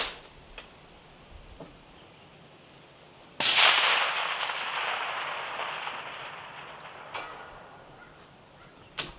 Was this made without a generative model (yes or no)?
yes